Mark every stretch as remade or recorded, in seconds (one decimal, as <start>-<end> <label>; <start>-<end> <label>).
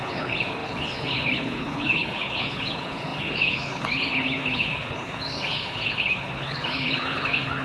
0.0-7.6 remade